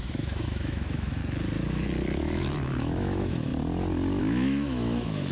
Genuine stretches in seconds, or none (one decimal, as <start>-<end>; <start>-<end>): 1.2-2.2; 3.5-4.2